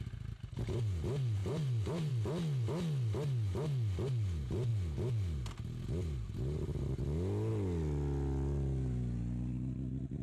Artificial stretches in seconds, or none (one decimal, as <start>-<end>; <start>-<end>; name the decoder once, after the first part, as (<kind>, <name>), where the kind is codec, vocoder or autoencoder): 1.4-2.1 (vocoder, BigVGAN v2)